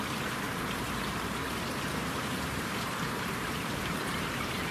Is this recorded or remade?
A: remade